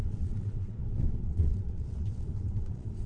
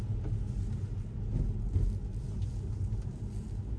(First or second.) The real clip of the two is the second